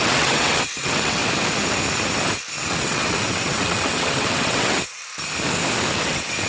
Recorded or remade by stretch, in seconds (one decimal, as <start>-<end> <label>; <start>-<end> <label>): 0.0-1.2 remade; 1.2-2.6 recorded; 2.6-5.0 remade; 5.0-6.0 recorded; 6.0-6.5 remade